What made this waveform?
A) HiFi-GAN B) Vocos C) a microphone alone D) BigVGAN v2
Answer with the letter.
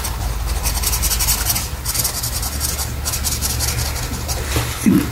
C